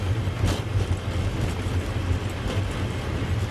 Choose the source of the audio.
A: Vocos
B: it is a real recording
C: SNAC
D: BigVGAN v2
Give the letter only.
B